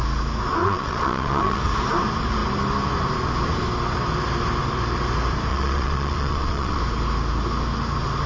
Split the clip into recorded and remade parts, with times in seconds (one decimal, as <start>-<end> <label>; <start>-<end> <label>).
0.0-0.6 recorded; 0.6-1.6 remade; 1.6-5.5 recorded; 5.5-6.8 remade; 6.8-8.3 recorded